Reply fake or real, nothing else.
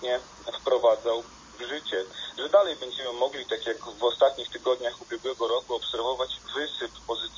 real